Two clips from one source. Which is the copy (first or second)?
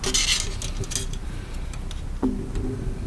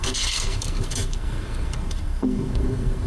second